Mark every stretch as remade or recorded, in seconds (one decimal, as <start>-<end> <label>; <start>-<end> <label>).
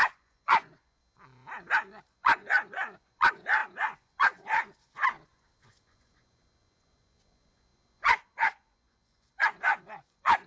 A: 0.0-1.0 remade; 1.0-2.1 recorded; 2.1-10.5 remade